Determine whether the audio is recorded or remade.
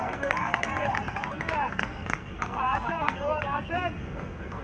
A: remade